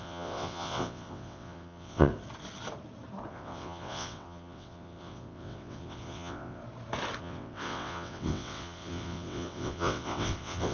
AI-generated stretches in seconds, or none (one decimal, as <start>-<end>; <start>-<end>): 0.0-2.1; 3.3-6.6; 7.2-10.7